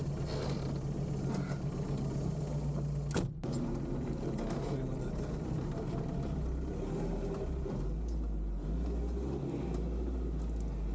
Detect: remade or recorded recorded